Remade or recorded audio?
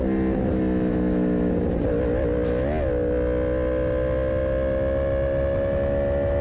recorded